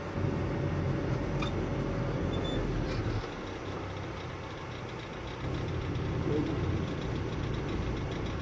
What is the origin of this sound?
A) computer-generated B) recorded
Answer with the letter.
B